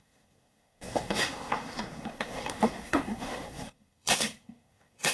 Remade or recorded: remade